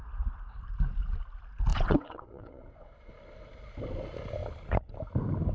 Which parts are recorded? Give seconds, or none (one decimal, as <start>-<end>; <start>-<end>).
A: 0.0-1.7; 3.1-5.5